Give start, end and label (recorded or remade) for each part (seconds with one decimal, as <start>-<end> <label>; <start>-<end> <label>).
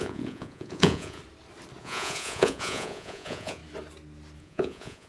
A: 0.0-1.2 remade; 1.2-1.8 recorded; 1.8-3.6 remade; 3.6-4.4 recorded; 4.4-5.1 remade